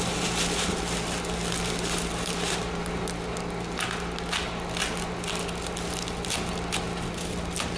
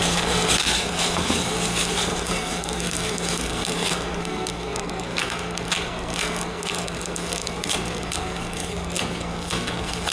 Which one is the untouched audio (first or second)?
first